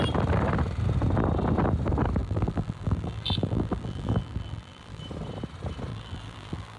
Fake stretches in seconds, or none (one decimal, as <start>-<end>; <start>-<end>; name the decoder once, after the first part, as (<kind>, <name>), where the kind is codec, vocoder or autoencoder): 2.2-5.0 (vocoder, BigVGAN v2); 5.9-6.8